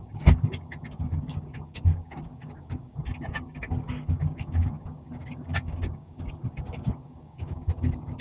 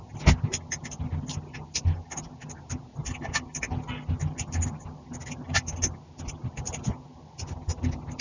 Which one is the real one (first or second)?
second